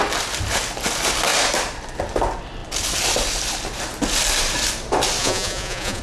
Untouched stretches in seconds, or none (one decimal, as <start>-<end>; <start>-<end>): 0.0-5.2